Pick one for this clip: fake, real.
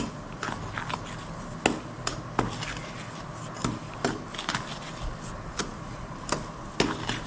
real